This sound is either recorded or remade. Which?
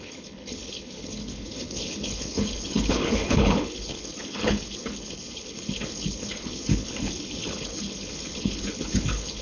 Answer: remade